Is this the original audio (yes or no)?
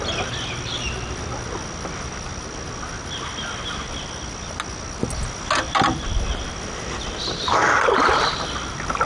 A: yes